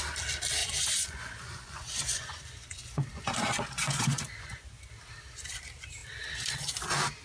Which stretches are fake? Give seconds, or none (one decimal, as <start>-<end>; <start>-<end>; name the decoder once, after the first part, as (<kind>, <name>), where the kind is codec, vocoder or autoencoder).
0.6-4.9 (vocoder, Vocos)